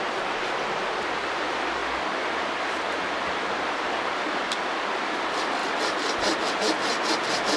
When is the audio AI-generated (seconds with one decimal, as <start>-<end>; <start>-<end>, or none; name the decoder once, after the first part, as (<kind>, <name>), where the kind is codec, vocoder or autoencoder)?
0.0-5.6 (vocoder, BigVGAN v2); 6.5-7.6